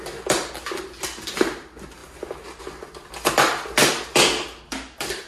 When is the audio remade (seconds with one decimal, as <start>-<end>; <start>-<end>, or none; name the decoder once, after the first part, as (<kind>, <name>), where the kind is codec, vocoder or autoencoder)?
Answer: none